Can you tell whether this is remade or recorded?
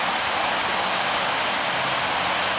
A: recorded